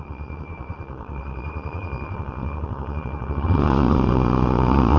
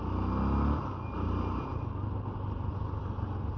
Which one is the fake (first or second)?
first